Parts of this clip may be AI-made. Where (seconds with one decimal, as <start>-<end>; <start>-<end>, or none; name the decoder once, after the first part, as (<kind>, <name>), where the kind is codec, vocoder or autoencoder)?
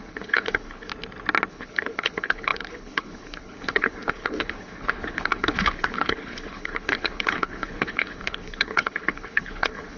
0.0-0.9 (codec, HILCodec); 1.5-10.0